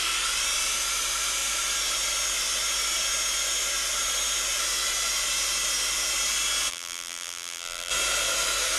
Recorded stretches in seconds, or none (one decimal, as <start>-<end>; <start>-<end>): 0.0-6.7; 7.9-8.8